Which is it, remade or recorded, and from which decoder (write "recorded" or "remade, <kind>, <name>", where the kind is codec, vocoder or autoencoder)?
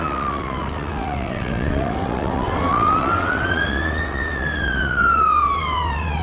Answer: remade, vocoder, WaveNeXt